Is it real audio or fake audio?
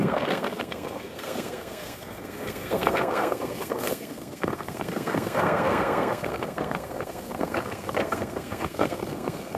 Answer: fake